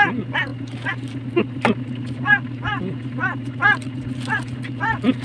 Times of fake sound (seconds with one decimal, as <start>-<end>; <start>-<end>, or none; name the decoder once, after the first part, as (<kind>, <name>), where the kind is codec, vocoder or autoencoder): none